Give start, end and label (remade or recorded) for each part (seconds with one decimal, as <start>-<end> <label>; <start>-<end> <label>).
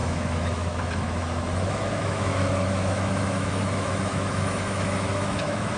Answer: 0.0-5.8 remade